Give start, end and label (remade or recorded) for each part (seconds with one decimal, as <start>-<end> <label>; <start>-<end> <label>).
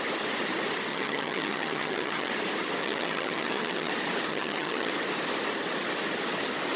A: 0.0-0.9 recorded; 0.9-2.3 remade; 2.3-2.8 recorded; 2.8-3.9 remade; 3.9-4.3 recorded; 4.3-4.9 remade; 4.9-6.8 recorded